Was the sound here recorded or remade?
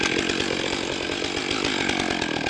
recorded